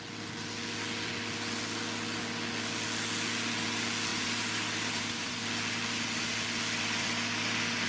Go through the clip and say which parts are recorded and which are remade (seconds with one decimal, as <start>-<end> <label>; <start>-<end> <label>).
0.0-4.1 recorded; 4.1-5.4 remade; 5.4-7.9 recorded